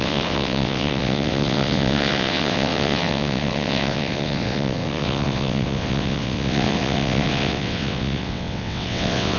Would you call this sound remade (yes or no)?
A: yes